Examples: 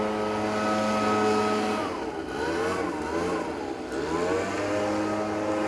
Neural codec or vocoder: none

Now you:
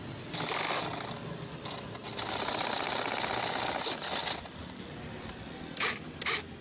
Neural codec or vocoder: none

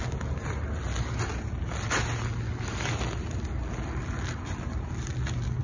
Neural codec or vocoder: none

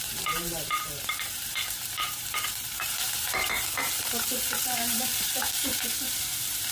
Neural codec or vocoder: vocoder, BigVGAN v2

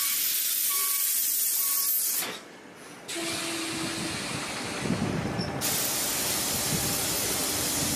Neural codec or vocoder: none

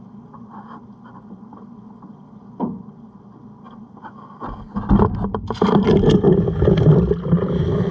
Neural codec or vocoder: none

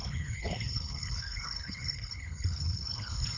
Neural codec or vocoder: codec, HILCodec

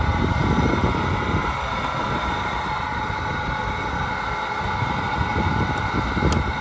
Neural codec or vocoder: none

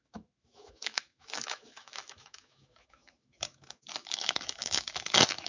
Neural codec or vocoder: autoencoder, DAC-VAE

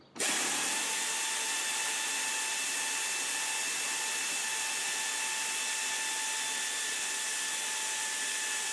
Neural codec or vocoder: none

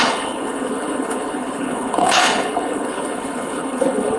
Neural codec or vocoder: codec, HILCodec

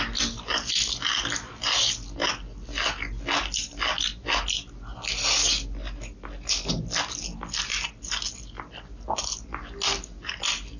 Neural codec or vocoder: none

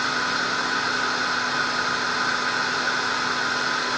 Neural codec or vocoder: none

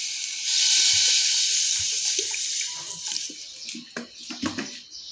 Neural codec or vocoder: none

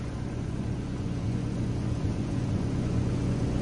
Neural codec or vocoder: vocoder, Vocos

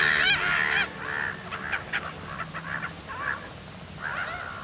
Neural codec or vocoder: none